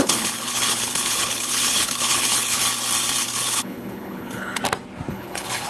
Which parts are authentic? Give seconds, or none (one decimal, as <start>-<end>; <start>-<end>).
2.6-3.2; 4.6-5.1